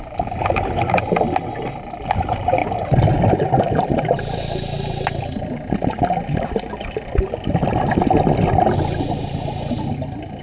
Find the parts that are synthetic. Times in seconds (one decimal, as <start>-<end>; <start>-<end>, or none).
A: none

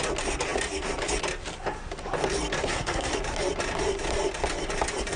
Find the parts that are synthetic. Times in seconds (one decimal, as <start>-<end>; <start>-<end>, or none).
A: 2.6-3.1

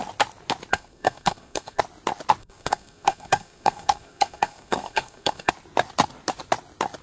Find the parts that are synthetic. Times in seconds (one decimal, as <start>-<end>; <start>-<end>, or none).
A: 0.7-1.8; 2.4-5.5

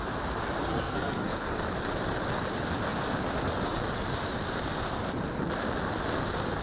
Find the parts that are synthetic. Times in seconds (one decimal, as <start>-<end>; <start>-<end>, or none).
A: 0.7-1.5

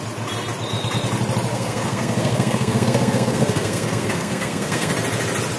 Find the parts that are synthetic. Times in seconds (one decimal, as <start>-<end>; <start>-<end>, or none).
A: 1.5-4.9

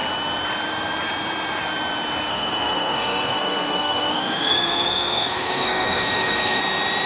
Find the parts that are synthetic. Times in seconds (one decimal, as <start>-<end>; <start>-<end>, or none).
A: 2.3-6.6

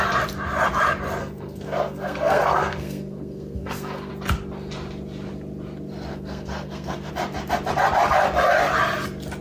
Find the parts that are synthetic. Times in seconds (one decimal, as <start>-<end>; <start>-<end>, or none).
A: 1.2-4.1; 6.1-7.1

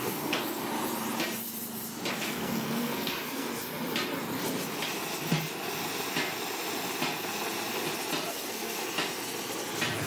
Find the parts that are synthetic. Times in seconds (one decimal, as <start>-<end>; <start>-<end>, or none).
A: 0.0-0.6; 2.1-3.5; 8.3-8.8